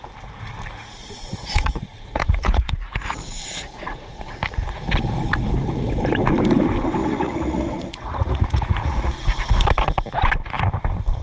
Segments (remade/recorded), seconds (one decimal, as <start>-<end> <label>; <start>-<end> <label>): 0.0-1.0 recorded; 1.0-4.8 remade; 4.8-7.0 recorded; 7.0-9.6 remade; 9.6-11.2 recorded